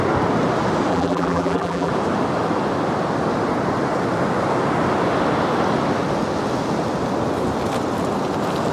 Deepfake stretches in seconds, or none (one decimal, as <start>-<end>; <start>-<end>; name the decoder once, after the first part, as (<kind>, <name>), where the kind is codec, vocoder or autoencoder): 0.9-1.9 (vocoder, BigVGAN v2)